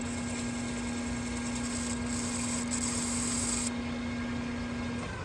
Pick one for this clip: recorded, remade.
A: recorded